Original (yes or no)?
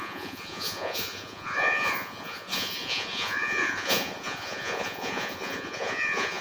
no